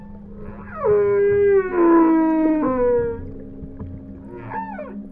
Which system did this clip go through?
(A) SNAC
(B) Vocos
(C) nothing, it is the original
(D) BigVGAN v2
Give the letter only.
C